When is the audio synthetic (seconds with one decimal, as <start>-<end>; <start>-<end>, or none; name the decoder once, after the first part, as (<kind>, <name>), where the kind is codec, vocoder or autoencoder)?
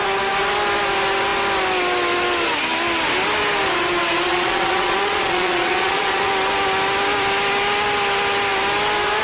4.3-6.3 (vocoder, Vocos)